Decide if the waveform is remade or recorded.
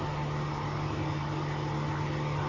recorded